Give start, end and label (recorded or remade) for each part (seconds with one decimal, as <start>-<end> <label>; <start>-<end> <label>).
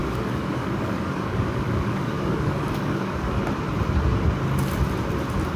0.0-3.4 remade; 3.4-5.6 recorded